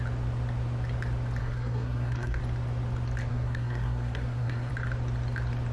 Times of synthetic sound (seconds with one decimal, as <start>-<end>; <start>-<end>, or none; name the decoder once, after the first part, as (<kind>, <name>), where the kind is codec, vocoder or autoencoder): 1.4-2.4 (codec, SNAC); 3.3-4.7

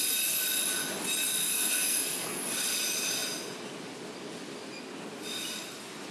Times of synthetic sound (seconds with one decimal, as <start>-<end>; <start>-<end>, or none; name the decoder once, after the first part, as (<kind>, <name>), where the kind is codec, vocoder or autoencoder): 1.4-2.4 (codec, SNAC)